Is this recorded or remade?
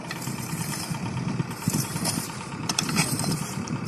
remade